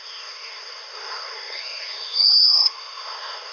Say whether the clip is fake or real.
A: fake